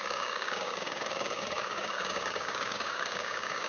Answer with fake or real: fake